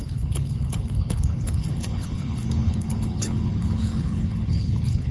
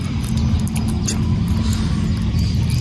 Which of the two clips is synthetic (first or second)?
first